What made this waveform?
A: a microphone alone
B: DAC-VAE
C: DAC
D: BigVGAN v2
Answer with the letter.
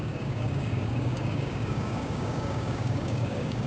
C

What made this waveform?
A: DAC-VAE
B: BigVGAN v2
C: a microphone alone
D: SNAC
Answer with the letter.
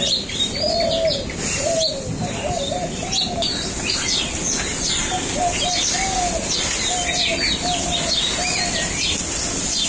C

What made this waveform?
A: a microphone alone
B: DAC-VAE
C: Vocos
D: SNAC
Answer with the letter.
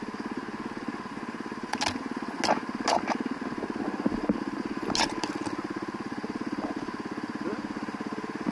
A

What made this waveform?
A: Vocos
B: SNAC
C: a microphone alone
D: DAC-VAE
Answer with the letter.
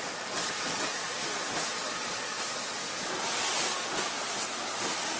C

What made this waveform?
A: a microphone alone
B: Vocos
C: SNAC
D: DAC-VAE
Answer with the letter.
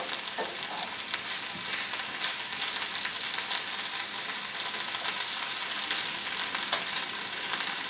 A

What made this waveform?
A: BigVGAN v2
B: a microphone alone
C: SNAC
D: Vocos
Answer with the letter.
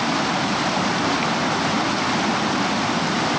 B